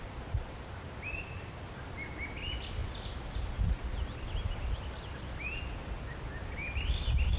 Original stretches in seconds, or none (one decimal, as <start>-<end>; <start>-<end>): 0.0-7.4